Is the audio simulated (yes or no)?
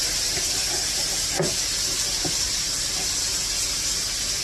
no